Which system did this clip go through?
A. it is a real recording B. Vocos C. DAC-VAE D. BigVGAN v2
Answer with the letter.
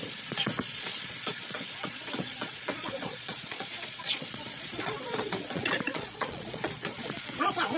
B